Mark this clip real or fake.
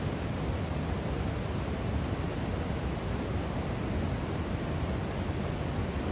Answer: real